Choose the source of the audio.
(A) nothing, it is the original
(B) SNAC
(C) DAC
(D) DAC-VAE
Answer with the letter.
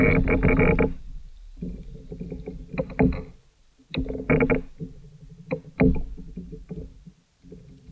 A